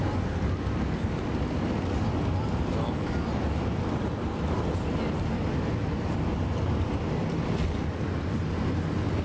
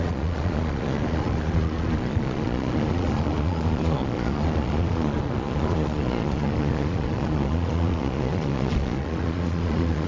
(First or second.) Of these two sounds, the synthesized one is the second